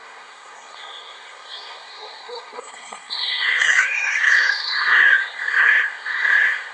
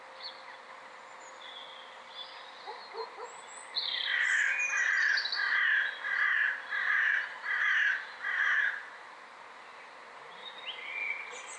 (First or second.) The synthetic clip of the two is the first